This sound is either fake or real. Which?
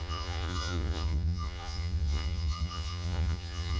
fake